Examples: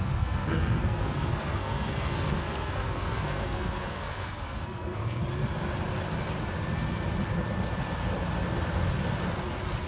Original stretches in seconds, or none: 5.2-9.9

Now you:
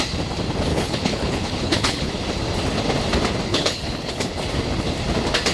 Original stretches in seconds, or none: 0.0-0.7; 2.1-3.5; 4.3-5.5

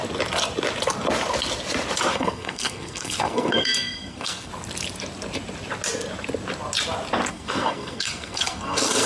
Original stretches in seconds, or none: 0.0-2.1; 4.5-7.3

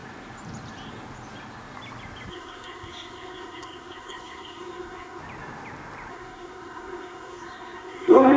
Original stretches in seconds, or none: 0.0-2.3; 5.2-6.1

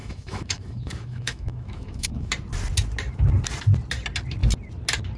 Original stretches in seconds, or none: 2.3-5.2

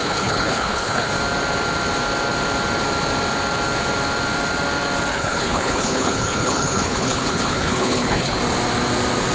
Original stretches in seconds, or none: 1.1-5.1; 8.4-9.3